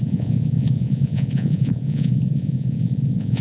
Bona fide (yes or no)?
no